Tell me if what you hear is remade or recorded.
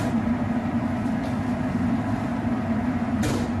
remade